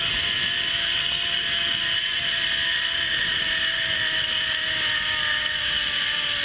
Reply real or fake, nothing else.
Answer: real